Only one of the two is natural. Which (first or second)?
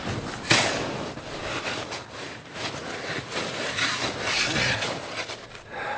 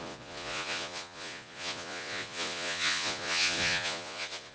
first